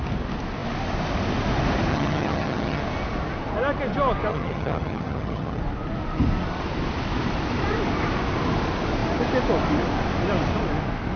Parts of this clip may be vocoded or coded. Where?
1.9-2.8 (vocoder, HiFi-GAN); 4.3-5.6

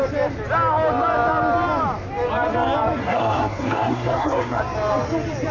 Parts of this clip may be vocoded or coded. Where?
3.0-4.6 (codec, SNAC)

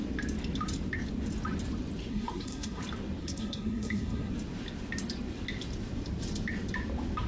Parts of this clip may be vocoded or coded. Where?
2.1-2.8 (codec, SNAC); 3.2-4.3